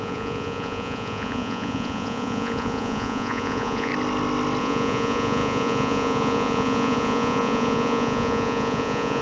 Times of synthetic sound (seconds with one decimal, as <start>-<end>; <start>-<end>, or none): 0.0-3.9; 4.6-9.2